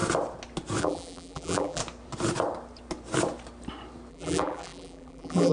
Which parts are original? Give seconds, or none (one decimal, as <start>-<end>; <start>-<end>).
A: 0.0-0.8; 1.8-4.1